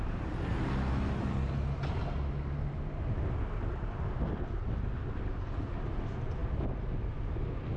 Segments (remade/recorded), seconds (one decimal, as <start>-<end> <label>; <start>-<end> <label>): 0.0-7.8 recorded